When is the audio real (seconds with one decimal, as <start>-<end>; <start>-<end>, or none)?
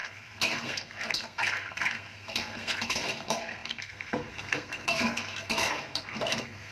none